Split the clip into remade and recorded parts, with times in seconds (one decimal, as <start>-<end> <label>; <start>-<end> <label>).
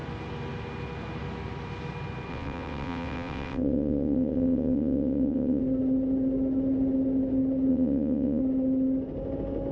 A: 0.0-2.3 recorded; 2.3-5.6 remade; 5.6-7.7 recorded; 7.7-8.4 remade; 8.4-9.7 recorded